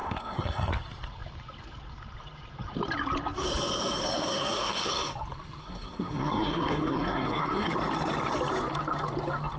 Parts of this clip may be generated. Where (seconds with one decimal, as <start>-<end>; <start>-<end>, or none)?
0.0-0.7; 4.0-4.9; 5.6-7.7